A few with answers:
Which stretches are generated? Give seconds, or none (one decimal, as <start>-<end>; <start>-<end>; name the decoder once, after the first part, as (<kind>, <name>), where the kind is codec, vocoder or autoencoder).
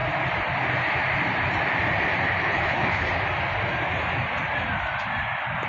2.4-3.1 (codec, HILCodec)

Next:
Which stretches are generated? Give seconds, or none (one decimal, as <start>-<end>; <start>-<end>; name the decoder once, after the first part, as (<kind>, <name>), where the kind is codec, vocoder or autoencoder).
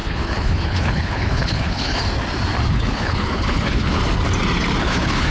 0.0-2.0 (codec, HILCodec); 2.7-4.0; 4.8-5.3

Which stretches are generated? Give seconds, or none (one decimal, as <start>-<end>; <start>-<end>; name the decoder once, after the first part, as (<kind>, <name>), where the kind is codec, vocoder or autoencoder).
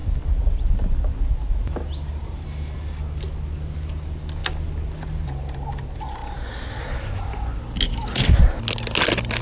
none